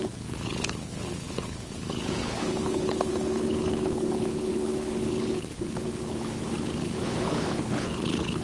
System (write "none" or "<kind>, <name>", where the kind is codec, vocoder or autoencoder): codec, HILCodec